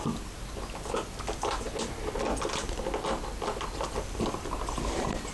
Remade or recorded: recorded